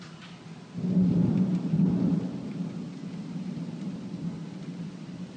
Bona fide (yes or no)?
yes